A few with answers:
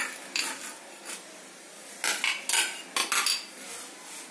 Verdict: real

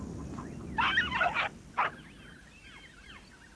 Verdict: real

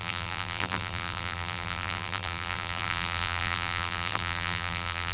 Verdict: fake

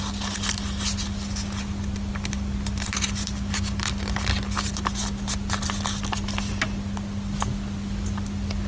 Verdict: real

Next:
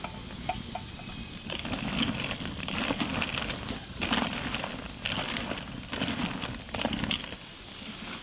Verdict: real